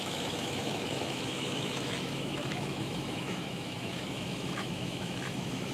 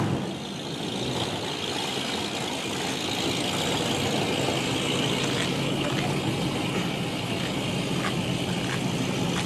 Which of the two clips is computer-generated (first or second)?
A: first